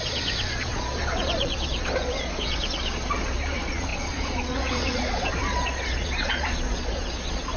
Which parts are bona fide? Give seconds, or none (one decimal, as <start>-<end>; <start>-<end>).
none